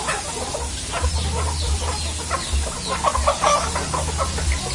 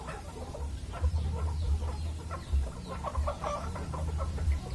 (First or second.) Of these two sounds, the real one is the first